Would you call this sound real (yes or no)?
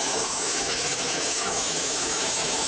no